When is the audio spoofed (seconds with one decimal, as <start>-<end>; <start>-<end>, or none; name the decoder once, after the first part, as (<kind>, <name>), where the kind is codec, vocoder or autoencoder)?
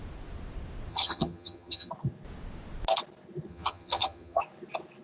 0.9-1.9 (vocoder, HiFi-GAN); 3.5-4.4